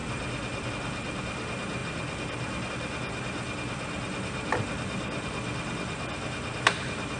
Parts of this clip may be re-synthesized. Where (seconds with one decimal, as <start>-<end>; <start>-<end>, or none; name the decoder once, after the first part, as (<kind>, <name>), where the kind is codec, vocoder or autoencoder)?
none